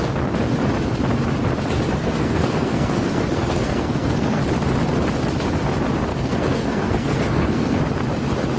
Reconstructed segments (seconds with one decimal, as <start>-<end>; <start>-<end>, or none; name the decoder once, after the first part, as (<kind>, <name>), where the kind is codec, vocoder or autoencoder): 2.0-4.4 (codec, SNAC); 6.1-7.8